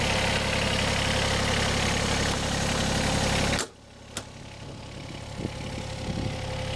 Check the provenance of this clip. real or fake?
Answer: real